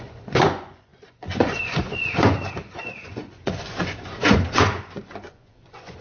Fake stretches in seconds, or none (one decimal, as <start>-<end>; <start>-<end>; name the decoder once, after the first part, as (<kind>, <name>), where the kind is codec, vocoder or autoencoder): 0.0-6.0 (vocoder, Vocos)